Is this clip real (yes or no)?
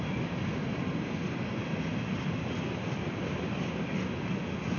yes